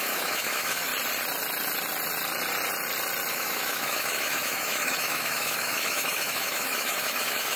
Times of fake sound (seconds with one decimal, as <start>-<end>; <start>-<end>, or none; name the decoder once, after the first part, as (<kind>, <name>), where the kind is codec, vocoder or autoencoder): 0.0-0.9 (autoencoder, DAC-VAE); 3.3-7.6